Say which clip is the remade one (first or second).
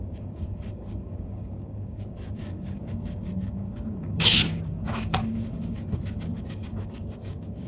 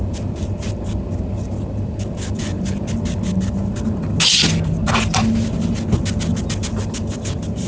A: first